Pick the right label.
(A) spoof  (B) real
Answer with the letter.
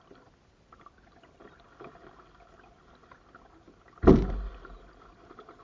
B